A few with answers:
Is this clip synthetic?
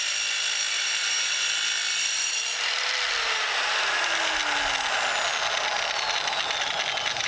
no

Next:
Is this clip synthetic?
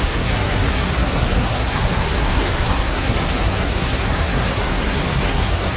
yes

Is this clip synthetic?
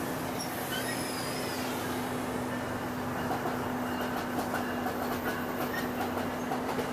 no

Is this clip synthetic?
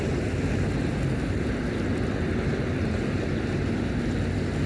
no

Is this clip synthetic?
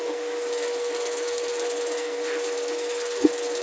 yes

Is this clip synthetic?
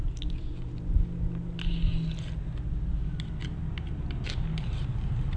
no